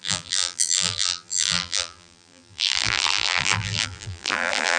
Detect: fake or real fake